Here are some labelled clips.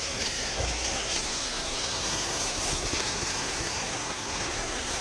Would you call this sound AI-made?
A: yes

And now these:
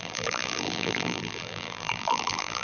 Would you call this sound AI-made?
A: yes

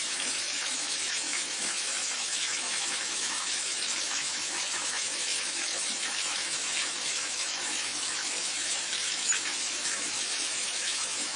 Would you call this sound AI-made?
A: yes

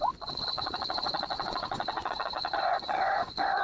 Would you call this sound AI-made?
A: yes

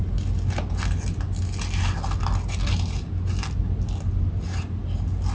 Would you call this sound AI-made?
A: no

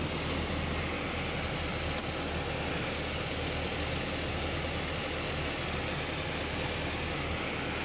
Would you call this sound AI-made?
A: no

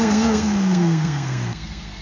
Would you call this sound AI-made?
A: yes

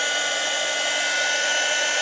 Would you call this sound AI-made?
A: no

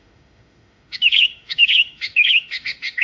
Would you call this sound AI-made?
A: yes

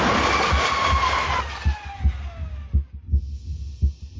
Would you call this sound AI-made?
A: no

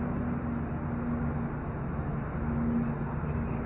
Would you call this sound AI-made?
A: no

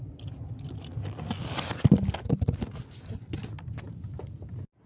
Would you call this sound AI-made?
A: no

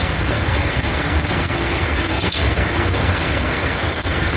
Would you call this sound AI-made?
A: yes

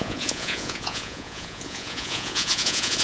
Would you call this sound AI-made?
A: yes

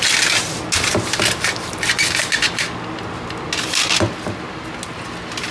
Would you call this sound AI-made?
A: no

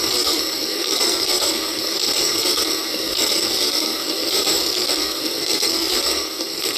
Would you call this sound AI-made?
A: yes